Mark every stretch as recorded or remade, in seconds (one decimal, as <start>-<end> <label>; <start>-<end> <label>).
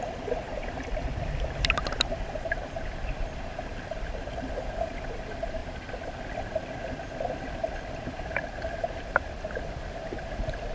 0.0-5.6 remade; 5.6-6.2 recorded; 6.2-10.7 remade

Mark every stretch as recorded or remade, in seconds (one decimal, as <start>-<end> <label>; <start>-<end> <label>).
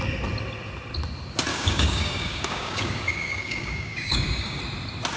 0.0-1.5 recorded; 1.5-4.6 remade; 4.6-5.2 recorded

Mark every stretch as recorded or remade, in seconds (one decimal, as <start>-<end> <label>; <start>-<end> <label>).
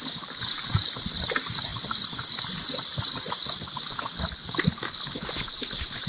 0.0-6.1 recorded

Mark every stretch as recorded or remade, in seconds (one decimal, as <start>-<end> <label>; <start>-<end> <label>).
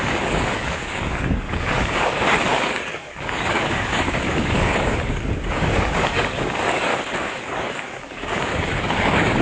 0.0-6.9 remade; 6.9-7.4 recorded; 7.4-9.4 remade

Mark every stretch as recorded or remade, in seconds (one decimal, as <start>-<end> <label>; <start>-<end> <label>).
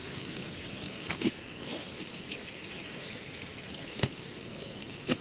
0.0-5.2 remade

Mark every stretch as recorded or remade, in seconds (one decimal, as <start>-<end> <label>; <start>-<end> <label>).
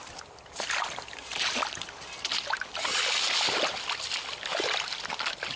0.0-0.8 remade; 0.8-5.6 recorded